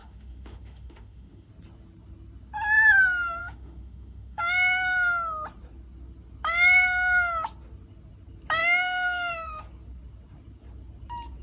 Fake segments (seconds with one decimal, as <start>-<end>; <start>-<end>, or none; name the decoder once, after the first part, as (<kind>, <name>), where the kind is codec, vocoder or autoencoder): 0.0-1.5 (autoencoder, DAC-VAE); 3.4-4.4; 8.6-9.6